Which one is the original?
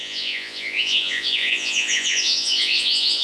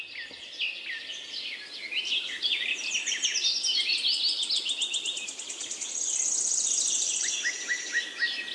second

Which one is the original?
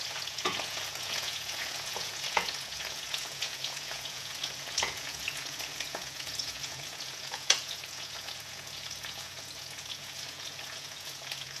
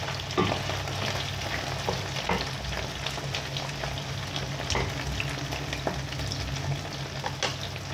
second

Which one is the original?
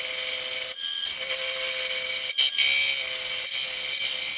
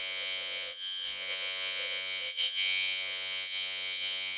first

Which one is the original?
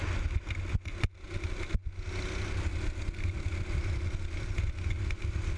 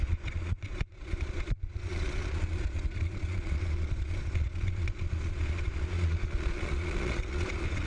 first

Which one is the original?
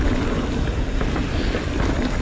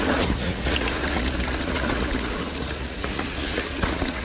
first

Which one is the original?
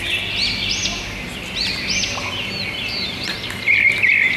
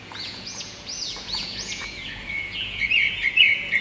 first